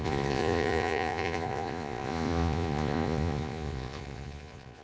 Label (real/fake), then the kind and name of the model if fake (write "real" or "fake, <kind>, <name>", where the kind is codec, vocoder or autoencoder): fake, vocoder, Vocos